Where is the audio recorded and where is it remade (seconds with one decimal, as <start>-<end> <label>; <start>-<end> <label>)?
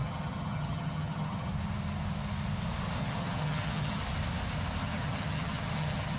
0.0-1.5 remade; 1.5-3.0 recorded; 3.0-4.0 remade; 4.0-4.8 recorded; 4.8-6.2 remade